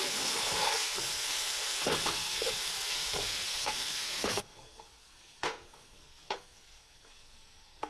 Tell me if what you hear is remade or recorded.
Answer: remade